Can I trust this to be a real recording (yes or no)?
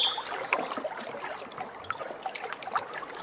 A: yes